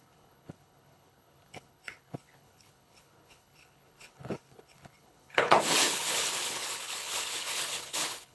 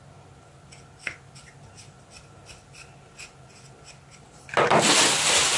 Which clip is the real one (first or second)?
second